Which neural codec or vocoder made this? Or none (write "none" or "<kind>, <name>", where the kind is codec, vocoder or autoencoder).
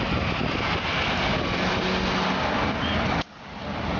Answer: none